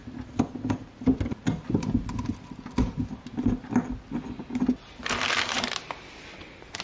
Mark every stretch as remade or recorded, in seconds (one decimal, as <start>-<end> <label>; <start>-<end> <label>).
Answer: 0.0-6.8 recorded